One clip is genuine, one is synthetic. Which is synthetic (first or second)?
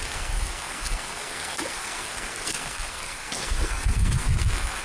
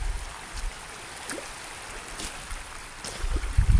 first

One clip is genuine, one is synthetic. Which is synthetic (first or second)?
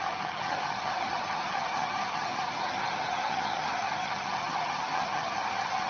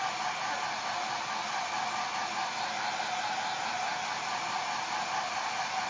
first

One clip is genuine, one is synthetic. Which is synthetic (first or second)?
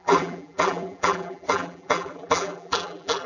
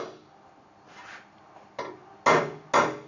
first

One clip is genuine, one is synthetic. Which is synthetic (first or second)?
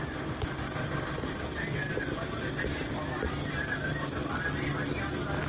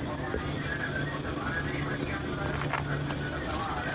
first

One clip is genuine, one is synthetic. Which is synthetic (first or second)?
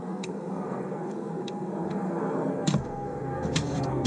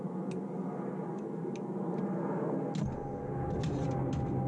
first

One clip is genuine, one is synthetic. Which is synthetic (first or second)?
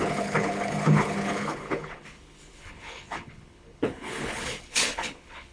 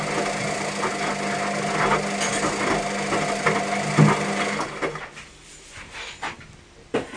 first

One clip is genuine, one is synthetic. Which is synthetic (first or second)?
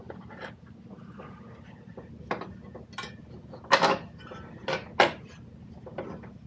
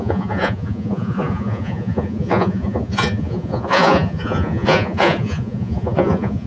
second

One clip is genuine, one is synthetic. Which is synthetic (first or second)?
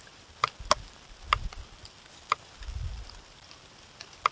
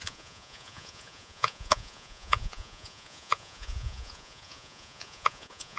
second